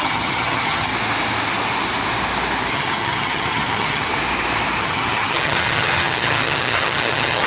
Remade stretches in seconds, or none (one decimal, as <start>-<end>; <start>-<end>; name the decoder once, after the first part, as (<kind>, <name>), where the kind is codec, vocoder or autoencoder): 0.0-0.9 (vocoder, HiFi-GAN); 2.7-4.1; 4.8-7.5